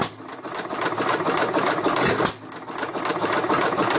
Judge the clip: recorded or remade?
recorded